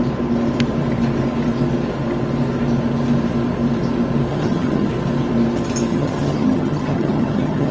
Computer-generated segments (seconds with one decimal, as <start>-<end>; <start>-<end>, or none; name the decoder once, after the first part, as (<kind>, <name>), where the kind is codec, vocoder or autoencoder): 4.3-4.9 (vocoder, HiFi-GAN); 5.9-7.7